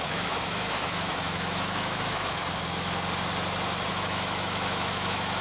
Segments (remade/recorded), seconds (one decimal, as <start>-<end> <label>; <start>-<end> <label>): 0.0-2.4 remade; 2.4-3.9 recorded; 3.9-5.4 remade